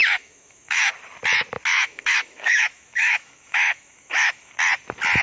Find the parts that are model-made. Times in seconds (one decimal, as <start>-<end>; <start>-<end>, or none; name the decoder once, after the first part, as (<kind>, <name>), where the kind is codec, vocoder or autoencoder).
0.0-0.9 (autoencoder, DAC-VAE); 1.7-4.5